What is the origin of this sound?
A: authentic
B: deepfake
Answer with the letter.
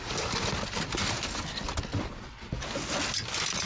A